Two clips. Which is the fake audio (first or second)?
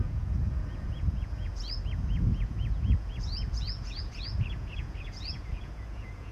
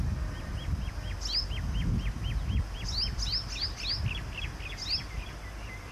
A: first